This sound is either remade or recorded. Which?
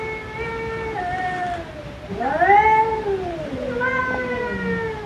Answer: recorded